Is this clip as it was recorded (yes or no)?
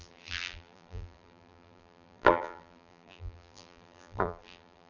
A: no